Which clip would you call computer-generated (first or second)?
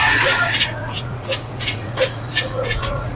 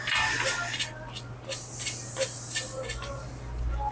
first